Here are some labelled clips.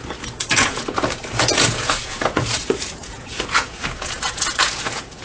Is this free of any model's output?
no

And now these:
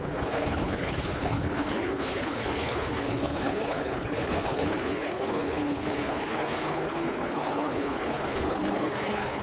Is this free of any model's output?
no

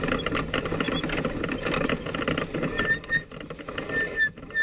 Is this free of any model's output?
yes